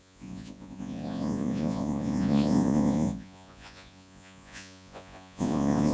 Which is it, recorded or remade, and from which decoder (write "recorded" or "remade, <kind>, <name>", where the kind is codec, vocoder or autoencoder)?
remade, vocoder, Vocos